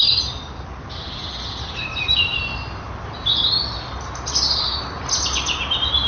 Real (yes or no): yes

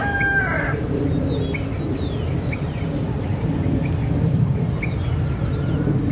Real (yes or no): yes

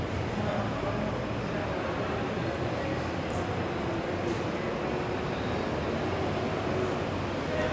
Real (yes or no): yes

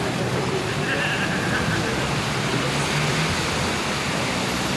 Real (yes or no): yes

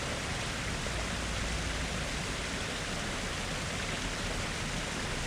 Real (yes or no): yes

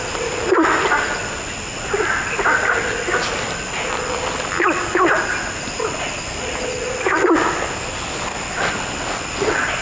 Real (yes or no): yes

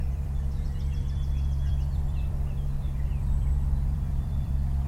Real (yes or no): no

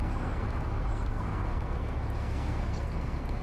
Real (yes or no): no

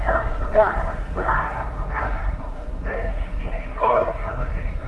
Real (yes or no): no